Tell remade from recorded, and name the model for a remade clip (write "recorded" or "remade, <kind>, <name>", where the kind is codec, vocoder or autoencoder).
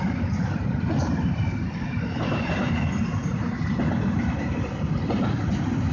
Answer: recorded